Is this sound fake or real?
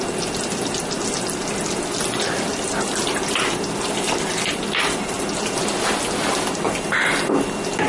real